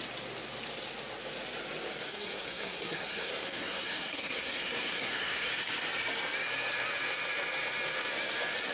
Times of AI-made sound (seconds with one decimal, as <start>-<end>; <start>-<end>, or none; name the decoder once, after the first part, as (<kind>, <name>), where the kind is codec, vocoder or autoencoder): 2.0-5.5 (codec, SNAC)